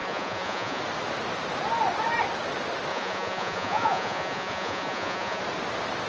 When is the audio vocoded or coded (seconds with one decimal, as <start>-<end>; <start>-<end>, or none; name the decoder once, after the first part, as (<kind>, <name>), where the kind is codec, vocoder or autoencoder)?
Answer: 0.0-0.8 (vocoder, Vocos); 2.9-5.4